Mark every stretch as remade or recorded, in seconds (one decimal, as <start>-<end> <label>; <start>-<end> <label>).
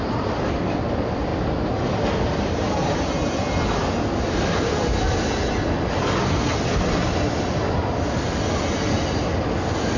0.0-10.0 recorded